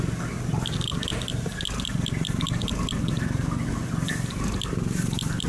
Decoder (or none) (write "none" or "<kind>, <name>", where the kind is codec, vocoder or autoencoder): none